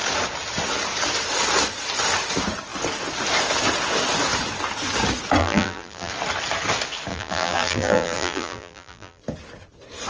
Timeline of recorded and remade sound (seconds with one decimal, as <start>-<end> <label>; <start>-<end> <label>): 0.0-5.4 recorded; 5.4-6.1 remade; 6.1-7.1 recorded; 7.1-9.2 remade; 9.2-10.1 recorded